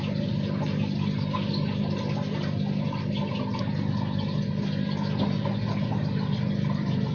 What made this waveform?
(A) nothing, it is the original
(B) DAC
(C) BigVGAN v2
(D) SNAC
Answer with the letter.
A